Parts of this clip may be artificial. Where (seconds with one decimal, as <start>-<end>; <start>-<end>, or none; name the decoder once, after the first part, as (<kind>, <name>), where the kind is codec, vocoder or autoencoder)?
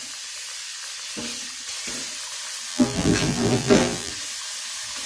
2.7-4.1 (vocoder, BigVGAN v2)